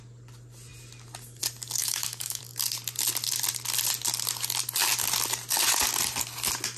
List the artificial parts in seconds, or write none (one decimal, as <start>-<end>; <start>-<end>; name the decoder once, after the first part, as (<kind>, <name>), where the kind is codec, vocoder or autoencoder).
1.8-2.4 (autoencoder, DAC-VAE)